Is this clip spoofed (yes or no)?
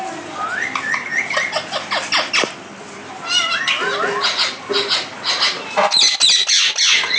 no